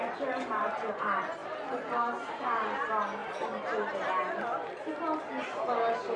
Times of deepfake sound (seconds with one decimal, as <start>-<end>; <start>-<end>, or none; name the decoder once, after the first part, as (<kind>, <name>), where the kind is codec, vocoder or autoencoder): none